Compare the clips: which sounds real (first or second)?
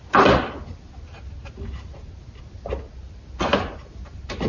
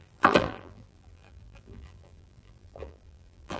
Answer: first